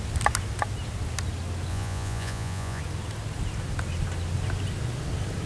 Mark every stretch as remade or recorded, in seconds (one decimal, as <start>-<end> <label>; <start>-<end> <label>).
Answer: 0.0-1.7 recorded; 1.7-2.8 remade; 2.8-5.5 recorded